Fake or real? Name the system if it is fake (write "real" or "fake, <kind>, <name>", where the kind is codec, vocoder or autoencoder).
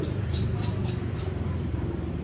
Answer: real